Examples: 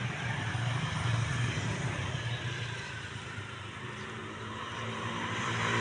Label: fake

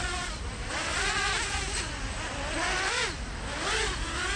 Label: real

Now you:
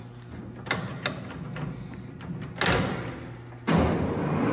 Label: real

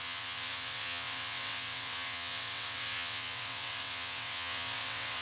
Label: fake